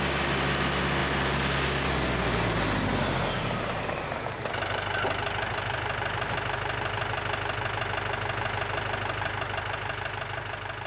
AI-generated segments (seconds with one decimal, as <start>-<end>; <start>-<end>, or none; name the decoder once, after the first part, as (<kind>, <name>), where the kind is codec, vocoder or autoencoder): none